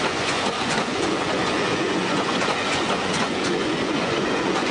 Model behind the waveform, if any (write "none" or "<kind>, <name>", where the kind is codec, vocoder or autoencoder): vocoder, Vocos